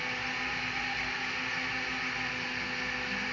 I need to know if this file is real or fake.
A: real